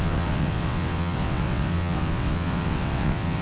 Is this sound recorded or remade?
remade